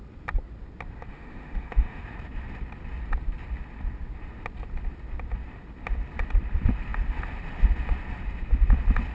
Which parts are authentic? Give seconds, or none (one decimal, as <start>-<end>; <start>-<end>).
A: 0.0-1.1; 2.0-9.1